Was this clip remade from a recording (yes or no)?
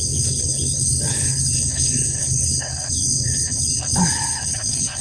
yes